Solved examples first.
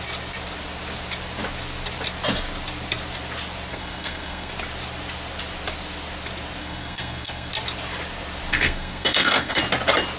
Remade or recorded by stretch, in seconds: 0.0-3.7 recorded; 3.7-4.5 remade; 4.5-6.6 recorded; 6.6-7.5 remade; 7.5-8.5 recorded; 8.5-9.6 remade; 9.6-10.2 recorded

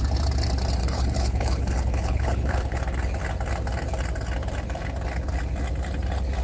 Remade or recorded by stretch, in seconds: 0.0-0.8 recorded; 0.8-2.8 remade; 2.8-6.4 recorded

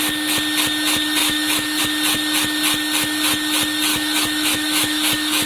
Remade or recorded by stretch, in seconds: 0.0-1.2 recorded; 1.2-1.8 remade; 1.8-3.9 recorded; 3.9-5.5 remade